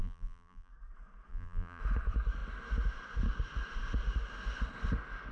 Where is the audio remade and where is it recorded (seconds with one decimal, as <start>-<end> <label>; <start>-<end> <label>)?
0.0-0.7 remade; 0.7-1.3 recorded; 1.3-1.8 remade; 1.8-5.3 recorded